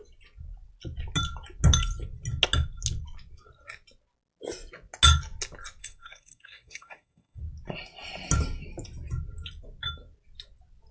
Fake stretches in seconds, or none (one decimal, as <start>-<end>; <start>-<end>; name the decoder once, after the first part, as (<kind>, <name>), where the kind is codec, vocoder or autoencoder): 5.8-7.4 (codec, SNAC)